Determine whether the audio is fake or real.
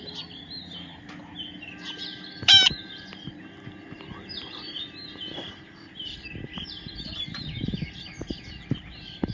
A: fake